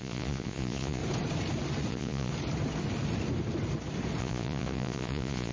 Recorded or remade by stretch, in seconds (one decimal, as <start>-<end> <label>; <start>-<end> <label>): 0.0-1.0 remade; 1.0-1.9 recorded; 1.9-2.3 remade; 2.3-4.2 recorded; 4.2-5.5 remade